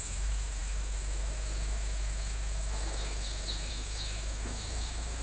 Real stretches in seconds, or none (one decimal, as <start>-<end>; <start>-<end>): none